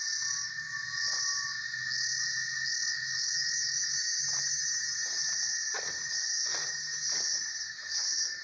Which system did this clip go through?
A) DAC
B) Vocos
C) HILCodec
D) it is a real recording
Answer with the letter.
D